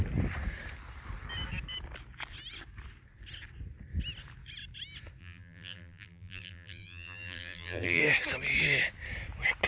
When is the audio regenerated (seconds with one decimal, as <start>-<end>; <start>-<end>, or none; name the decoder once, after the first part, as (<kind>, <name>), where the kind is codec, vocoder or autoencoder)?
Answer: 5.2-8.0 (vocoder, BigVGAN v2)